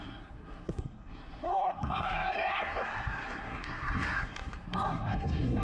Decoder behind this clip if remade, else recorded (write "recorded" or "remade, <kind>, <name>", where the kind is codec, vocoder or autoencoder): remade, codec, SNAC